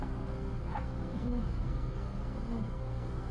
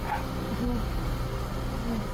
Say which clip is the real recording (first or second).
second